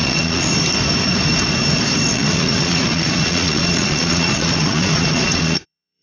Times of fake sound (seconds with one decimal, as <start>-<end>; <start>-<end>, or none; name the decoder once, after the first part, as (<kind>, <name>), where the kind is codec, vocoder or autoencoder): 0.0-0.5 (vocoder, Vocos); 2.1-6.0